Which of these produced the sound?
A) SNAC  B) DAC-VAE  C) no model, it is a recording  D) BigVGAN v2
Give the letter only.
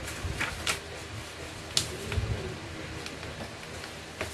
C